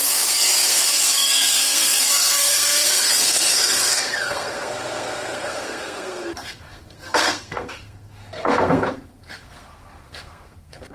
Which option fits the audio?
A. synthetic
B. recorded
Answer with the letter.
A